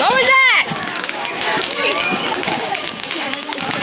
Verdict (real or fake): fake